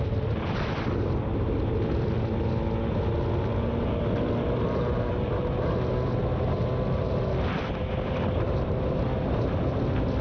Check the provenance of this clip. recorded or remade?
recorded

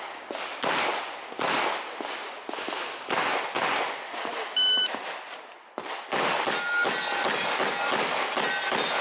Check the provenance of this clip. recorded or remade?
recorded